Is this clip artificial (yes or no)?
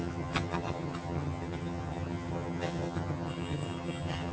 yes